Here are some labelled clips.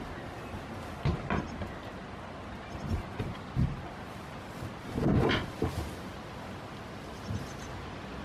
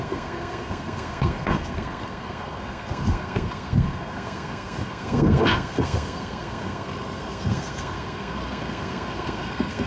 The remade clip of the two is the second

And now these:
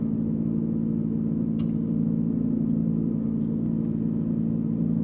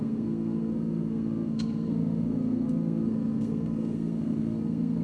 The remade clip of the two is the second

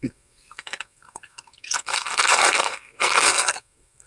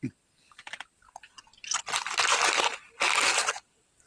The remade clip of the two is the first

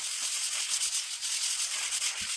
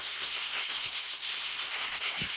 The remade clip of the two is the second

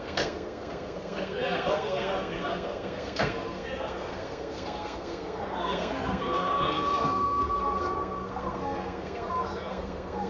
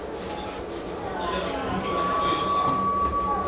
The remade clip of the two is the first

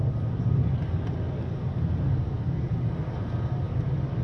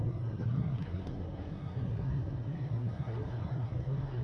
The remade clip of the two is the second